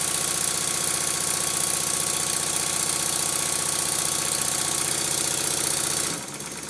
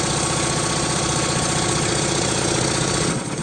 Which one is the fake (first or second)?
second